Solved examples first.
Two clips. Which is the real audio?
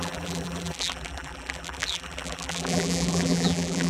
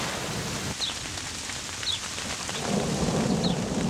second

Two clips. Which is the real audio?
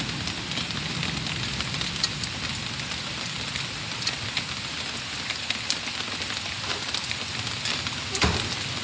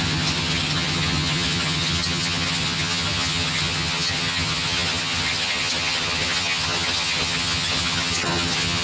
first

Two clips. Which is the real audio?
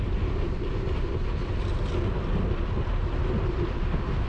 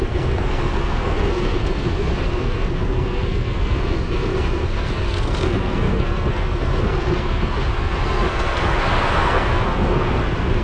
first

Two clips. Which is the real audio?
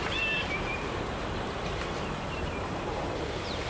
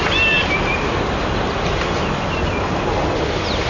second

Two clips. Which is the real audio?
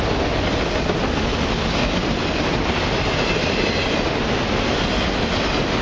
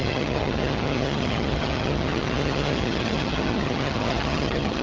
first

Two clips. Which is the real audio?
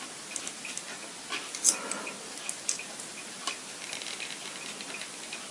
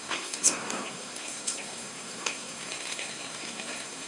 first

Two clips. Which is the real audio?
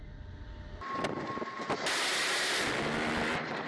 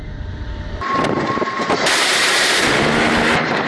first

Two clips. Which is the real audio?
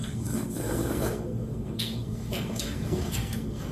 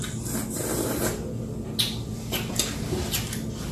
second